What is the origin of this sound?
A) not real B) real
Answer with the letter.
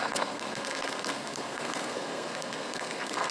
A